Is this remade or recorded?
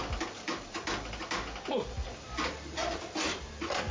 recorded